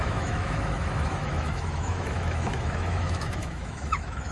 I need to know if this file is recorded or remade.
remade